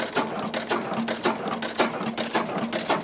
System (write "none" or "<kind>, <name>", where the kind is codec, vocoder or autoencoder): none